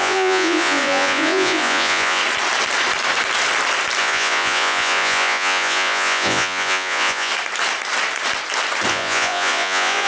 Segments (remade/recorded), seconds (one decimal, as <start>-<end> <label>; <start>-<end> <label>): 0.0-2.2 remade; 2.2-4.0 recorded; 4.0-7.3 remade; 7.3-8.9 recorded; 8.9-10.1 remade